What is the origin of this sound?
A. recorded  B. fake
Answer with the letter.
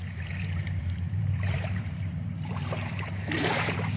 B